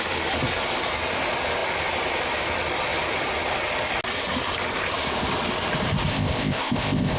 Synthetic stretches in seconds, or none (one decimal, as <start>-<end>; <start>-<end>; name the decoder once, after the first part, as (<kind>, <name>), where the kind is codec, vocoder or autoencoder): 6.1-7.2 (codec, ZipCodec)